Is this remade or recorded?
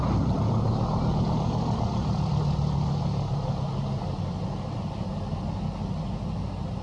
recorded